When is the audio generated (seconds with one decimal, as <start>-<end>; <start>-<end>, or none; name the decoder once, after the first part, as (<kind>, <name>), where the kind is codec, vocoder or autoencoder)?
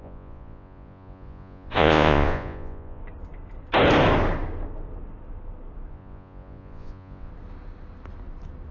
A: 0.0-3.0 (vocoder, Vocos); 5.9-7.3